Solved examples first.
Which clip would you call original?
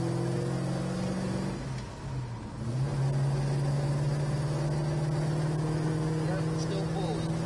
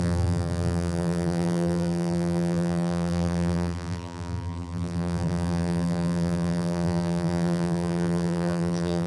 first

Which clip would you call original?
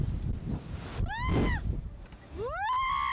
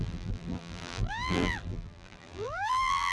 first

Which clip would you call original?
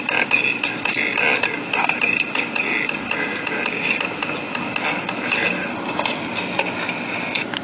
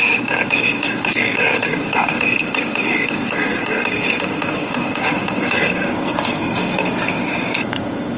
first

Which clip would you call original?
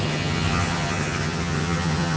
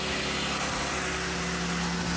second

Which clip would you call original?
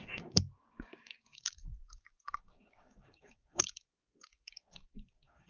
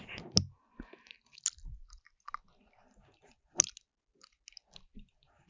second